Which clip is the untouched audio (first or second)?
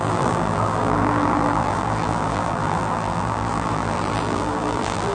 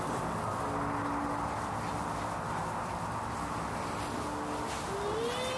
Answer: second